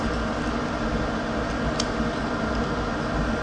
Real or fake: real